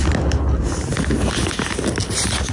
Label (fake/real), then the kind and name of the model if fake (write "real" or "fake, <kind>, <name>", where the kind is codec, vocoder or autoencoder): real